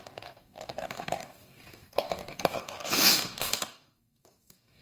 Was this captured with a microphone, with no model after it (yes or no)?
no